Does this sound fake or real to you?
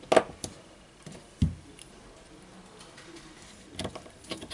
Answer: real